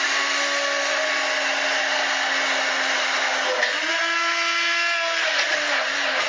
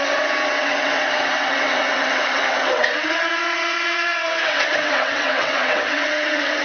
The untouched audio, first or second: first